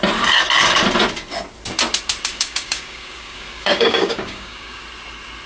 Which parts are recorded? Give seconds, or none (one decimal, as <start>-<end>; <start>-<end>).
0.0-2.3; 4.8-5.5